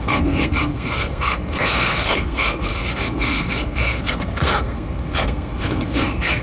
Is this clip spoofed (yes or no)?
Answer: yes